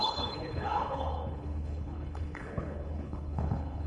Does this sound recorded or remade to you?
remade